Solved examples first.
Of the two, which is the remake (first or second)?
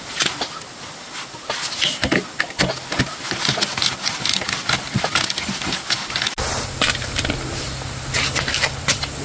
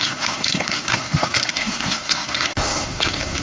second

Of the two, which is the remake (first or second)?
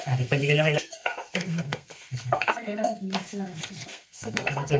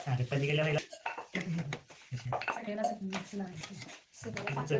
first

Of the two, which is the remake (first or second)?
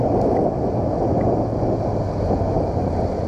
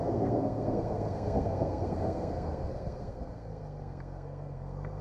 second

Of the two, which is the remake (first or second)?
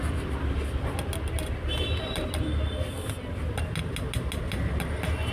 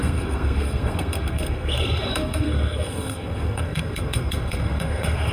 second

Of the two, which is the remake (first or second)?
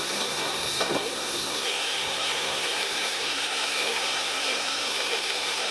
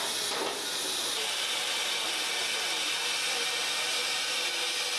first